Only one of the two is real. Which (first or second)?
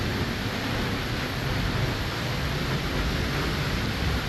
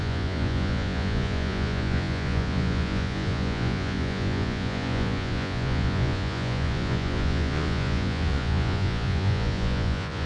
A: first